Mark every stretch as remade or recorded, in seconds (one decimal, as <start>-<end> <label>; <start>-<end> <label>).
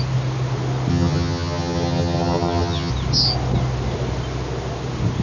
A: 0.0-0.9 recorded; 0.9-2.9 remade; 2.9-5.2 recorded